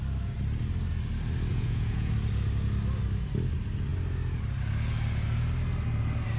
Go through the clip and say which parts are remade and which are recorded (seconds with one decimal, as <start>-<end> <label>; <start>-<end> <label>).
0.0-1.5 recorded; 1.5-2.1 remade; 2.1-6.4 recorded